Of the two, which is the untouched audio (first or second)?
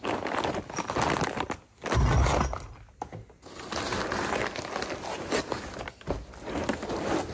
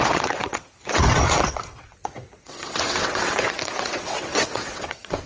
first